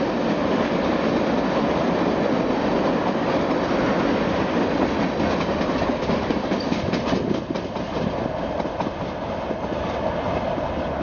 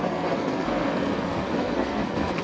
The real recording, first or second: first